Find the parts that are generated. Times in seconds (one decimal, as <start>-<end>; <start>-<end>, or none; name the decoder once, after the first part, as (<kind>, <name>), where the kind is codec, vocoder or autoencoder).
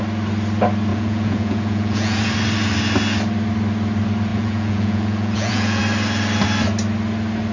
0.9-2.2 (vocoder, Vocos); 4.3-5.8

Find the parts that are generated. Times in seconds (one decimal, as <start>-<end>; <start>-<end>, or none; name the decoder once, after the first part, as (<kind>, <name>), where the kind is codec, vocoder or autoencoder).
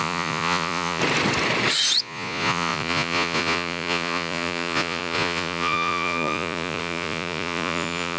0.0-1.0 (vocoder, Vocos); 2.0-8.2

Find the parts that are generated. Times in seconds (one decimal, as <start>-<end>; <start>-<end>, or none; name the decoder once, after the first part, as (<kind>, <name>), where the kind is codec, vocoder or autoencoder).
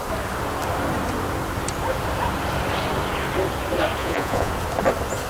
4.0-4.5 (vocoder, Vocos)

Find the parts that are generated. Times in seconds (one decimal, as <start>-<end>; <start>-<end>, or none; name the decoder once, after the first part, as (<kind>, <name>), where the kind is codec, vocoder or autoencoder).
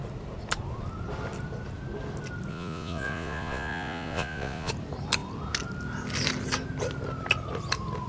2.5-4.7 (vocoder, Vocos)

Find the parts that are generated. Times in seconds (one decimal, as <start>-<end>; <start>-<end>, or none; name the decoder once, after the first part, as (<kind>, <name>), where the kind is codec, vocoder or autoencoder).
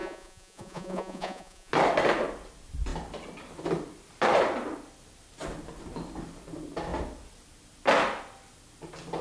0.0-1.7 (vocoder, Vocos)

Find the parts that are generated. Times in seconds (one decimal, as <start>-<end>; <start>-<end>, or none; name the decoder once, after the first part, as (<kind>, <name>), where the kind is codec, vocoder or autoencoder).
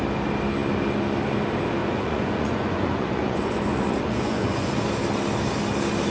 1.8-4.8 (vocoder, Vocos)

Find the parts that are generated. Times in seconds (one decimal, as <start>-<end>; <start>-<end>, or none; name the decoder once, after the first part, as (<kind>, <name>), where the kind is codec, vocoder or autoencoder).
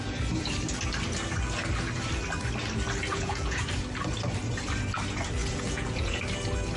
3.1-3.7 (vocoder, Vocos); 5.4-6.2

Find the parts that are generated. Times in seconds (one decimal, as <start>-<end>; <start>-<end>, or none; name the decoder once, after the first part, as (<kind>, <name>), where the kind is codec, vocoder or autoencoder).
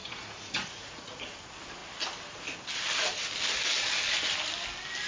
0.0-1.2 (vocoder, Vocos)